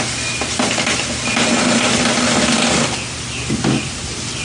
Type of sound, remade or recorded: recorded